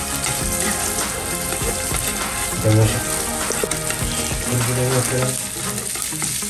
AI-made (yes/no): no